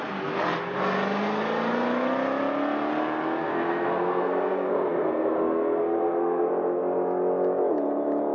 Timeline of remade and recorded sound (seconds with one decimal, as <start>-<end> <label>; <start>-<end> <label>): 0.0-3.4 recorded; 3.4-6.4 remade; 6.4-8.3 recorded